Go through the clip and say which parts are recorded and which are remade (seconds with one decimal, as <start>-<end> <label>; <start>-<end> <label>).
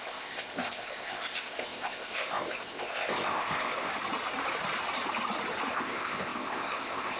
0.0-3.9 remade; 3.9-5.7 recorded; 5.7-7.2 remade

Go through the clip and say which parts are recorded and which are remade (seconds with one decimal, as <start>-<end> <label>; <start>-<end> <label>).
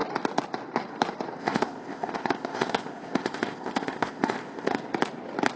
0.0-1.4 recorded; 1.4-4.8 remade; 4.8-5.6 recorded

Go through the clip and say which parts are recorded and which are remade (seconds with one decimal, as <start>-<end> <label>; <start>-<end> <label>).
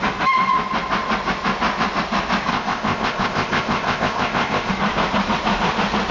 0.0-2.5 recorded; 2.5-4.7 remade; 4.7-6.1 recorded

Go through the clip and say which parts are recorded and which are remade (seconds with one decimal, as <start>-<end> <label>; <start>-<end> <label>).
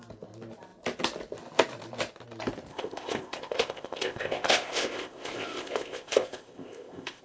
0.0-2.7 recorded; 2.7-7.2 remade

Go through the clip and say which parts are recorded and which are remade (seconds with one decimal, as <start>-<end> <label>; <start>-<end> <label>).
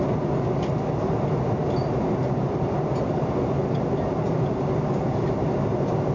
0.0-6.1 recorded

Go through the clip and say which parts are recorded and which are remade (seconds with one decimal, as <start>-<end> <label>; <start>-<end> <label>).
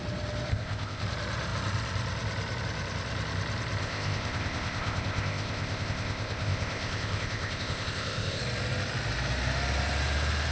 0.0-0.5 recorded; 0.5-1.0 remade; 1.0-3.8 recorded; 3.8-8.4 remade; 8.4-10.5 recorded